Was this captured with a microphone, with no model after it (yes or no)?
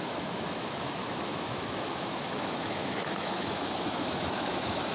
no